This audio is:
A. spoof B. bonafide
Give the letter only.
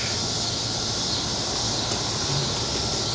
B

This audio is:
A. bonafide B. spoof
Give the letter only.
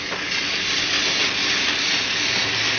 A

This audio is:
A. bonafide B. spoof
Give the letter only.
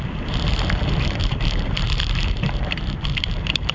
B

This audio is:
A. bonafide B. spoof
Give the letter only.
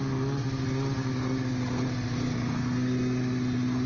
A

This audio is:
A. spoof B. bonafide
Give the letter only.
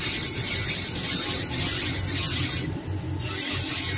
B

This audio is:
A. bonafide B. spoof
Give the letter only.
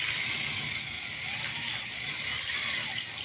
A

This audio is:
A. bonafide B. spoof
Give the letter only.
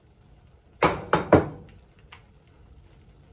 A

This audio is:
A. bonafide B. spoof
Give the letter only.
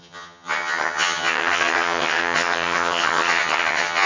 B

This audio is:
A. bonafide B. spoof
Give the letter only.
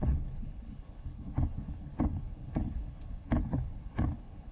B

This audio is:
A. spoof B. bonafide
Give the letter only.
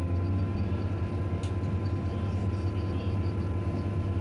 B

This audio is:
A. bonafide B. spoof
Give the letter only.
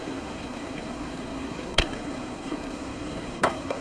B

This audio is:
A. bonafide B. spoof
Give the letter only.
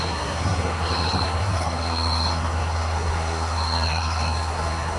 B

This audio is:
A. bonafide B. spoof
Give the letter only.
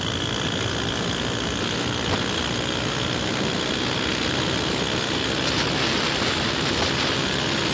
A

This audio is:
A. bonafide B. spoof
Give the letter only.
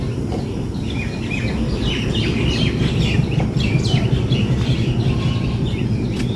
A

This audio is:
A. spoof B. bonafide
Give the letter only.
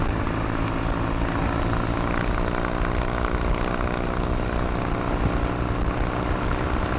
B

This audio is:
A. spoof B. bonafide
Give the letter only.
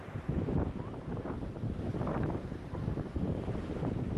A